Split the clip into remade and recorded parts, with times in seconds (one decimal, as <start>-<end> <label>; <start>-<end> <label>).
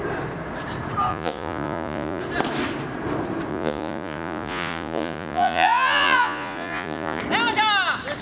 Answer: 0.0-1.1 recorded; 1.1-2.2 remade; 2.2-3.5 recorded; 3.5-7.2 remade; 7.2-8.2 recorded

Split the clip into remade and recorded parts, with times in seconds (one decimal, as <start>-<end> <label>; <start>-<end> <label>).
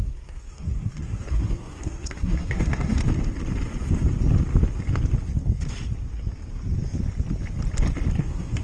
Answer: 0.0-3.0 remade; 3.0-8.2 recorded; 8.2-8.6 remade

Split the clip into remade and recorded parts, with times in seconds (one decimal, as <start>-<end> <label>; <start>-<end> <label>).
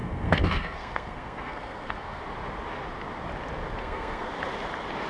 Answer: 0.0-2.2 remade; 2.2-3.8 recorded; 3.8-4.3 remade; 4.3-5.1 recorded